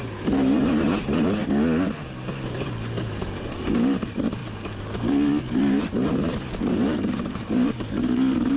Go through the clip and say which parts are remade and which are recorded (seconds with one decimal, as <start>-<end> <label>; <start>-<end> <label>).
0.0-1.4 remade; 1.4-3.4 recorded; 3.4-4.4 remade; 4.4-5.5 recorded; 5.5-8.6 remade